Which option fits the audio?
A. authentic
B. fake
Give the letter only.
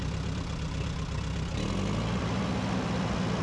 A